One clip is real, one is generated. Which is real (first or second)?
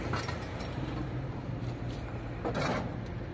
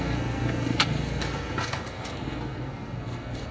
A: first